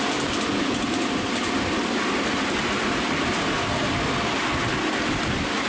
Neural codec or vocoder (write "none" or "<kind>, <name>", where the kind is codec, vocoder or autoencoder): none